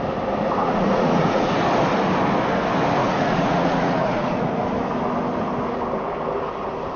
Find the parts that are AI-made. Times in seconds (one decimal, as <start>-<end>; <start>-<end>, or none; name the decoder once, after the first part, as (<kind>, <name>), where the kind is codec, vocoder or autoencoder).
0.6-1.5 (vocoder, Vocos); 3.0-4.5